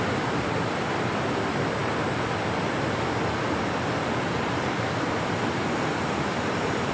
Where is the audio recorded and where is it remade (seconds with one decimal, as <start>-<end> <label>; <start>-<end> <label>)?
0.0-1.8 remade; 1.8-5.9 recorded; 5.9-6.9 remade